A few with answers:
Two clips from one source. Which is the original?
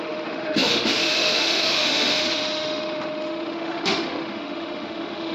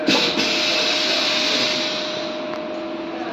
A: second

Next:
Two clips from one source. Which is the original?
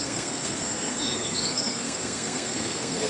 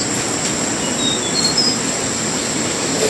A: second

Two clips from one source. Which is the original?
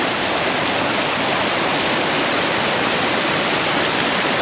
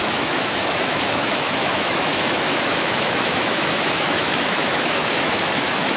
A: first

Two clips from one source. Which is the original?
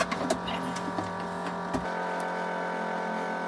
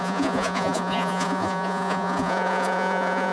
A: first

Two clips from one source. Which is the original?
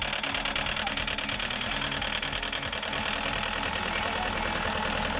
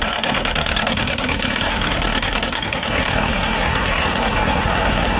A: first